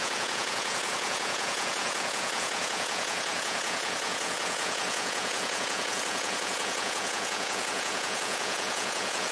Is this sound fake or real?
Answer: fake